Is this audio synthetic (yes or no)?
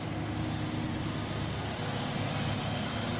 no